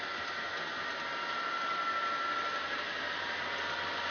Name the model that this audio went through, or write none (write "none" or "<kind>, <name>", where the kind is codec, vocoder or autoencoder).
none